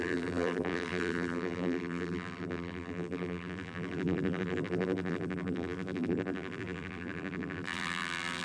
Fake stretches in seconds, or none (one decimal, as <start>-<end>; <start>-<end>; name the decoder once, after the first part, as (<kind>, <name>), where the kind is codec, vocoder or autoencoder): 0.0-8.4 (vocoder, BigVGAN v2)